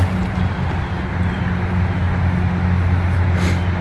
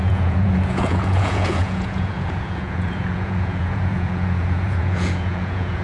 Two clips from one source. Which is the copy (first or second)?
second